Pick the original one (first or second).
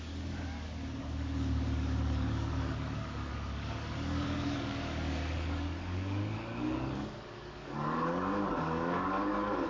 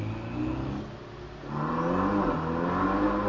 second